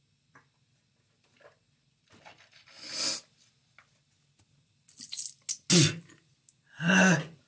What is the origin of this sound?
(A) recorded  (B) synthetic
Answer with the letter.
A